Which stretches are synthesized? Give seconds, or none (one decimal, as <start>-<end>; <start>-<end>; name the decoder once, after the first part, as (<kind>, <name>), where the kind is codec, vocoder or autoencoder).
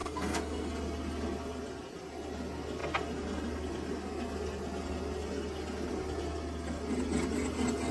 0.0-0.7 (codec, SNAC)